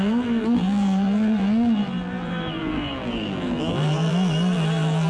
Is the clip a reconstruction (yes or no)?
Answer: yes